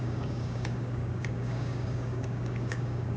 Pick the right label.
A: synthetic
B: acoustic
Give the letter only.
A